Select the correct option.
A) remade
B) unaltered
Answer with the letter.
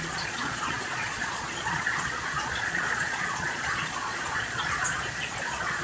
A